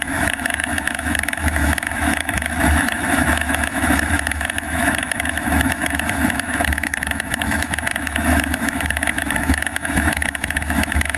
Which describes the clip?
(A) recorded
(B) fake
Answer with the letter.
B